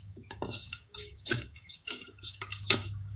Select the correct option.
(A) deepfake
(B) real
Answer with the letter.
A